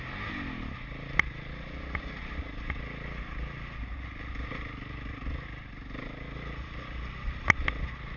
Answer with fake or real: real